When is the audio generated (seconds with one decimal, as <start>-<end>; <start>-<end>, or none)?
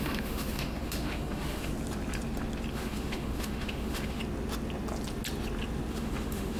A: 0.0-1.7; 2.7-4.2; 5.9-6.6